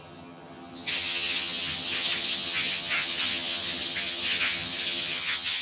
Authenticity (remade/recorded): remade